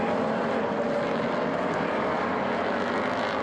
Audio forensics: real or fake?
real